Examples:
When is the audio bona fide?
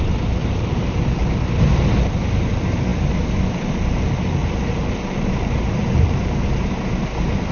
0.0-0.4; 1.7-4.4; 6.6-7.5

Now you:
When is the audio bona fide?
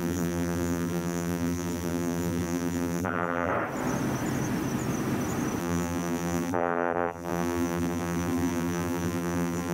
3.5-5.6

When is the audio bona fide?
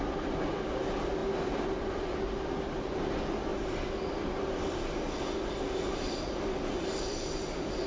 0.0-7.9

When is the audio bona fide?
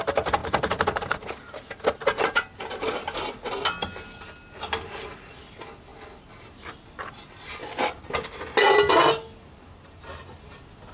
0.0-10.9